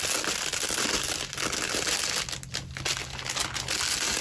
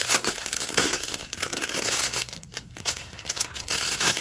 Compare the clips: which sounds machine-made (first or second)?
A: second